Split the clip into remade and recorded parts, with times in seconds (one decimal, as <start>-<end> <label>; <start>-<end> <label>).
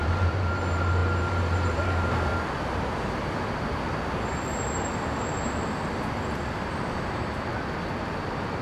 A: 0.0-2.3 remade; 2.3-6.7 recorded; 6.7-8.6 remade